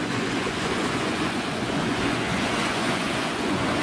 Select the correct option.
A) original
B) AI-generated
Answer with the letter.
B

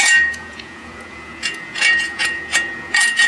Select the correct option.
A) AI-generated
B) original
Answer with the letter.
A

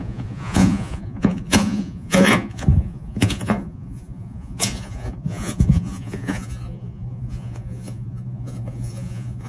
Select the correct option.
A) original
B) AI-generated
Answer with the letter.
B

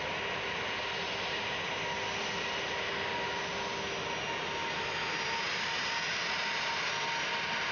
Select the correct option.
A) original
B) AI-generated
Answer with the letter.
A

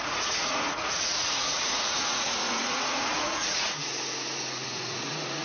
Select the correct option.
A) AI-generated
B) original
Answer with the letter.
A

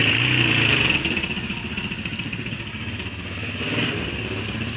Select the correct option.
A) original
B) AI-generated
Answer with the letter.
A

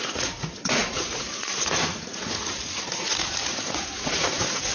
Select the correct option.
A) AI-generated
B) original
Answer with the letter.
A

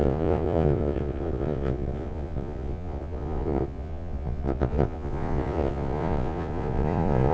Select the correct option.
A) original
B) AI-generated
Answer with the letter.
B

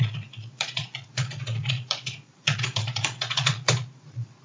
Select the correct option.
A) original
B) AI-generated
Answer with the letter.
B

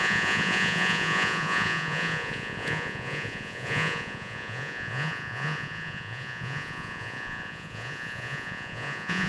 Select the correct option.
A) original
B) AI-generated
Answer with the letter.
B